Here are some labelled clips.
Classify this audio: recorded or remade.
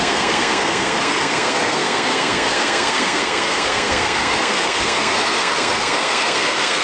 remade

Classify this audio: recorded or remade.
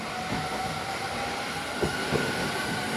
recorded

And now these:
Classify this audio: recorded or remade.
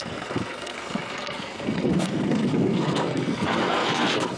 remade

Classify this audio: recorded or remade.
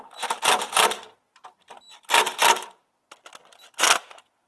recorded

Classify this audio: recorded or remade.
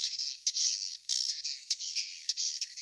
remade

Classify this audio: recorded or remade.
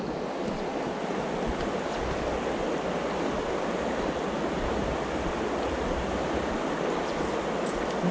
recorded